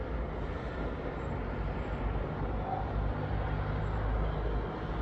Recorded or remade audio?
recorded